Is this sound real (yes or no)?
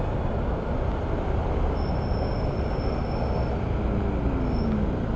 yes